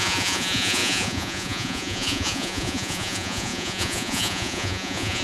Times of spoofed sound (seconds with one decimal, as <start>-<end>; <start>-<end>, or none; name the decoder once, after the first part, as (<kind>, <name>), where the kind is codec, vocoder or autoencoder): 0.0-5.2 (vocoder, Vocos)